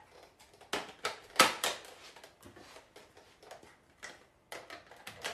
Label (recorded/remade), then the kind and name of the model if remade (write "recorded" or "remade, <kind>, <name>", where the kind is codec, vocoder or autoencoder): recorded